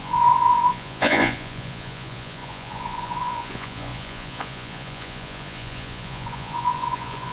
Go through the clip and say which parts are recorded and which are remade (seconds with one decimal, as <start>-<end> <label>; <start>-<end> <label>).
0.0-7.3 remade

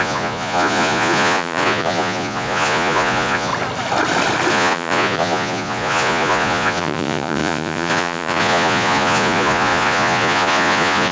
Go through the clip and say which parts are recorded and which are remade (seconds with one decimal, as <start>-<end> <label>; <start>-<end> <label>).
0.0-3.5 remade; 3.5-4.5 recorded; 4.5-11.1 remade

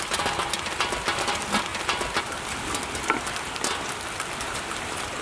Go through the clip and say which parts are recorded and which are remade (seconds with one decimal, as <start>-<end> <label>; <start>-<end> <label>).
0.0-5.2 recorded

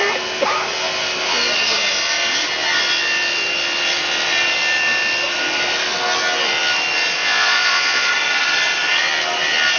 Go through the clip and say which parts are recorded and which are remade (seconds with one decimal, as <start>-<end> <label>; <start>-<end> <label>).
0.0-7.2 recorded; 7.2-8.1 remade; 8.1-9.8 recorded

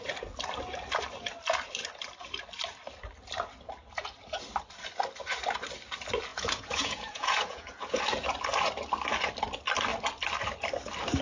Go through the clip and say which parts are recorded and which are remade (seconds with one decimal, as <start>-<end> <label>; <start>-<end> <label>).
0.0-6.3 recorded; 6.3-8.0 remade; 8.0-11.2 recorded

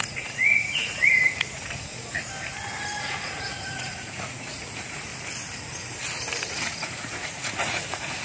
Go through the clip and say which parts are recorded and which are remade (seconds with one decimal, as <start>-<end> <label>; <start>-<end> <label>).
0.0-1.9 remade; 1.9-3.0 recorded; 3.0-5.1 remade; 5.1-6.5 recorded; 6.5-8.2 remade

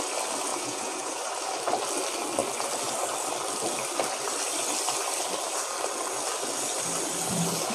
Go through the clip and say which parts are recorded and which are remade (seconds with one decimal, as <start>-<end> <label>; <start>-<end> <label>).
0.0-0.5 recorded; 0.5-1.2 remade; 1.2-7.7 recorded